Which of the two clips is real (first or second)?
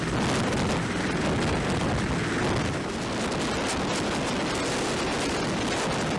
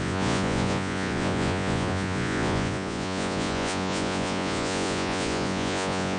first